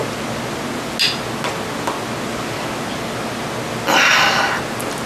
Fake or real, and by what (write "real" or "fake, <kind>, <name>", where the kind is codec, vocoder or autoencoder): real